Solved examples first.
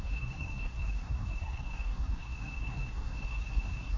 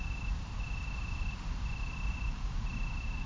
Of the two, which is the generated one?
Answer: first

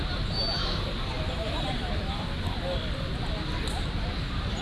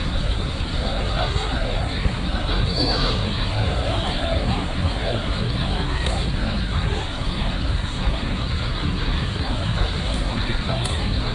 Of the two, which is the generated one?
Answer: second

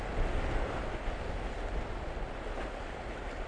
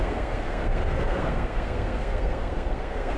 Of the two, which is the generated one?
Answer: second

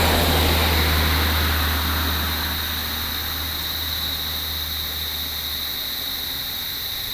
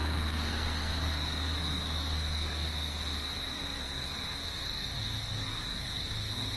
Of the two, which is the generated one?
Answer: second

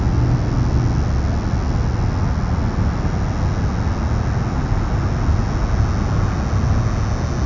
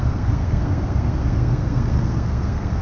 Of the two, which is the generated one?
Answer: second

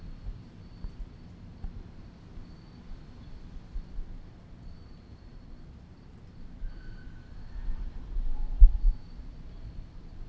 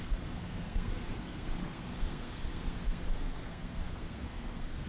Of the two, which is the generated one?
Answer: second